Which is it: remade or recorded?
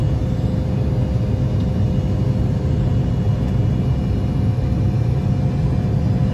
recorded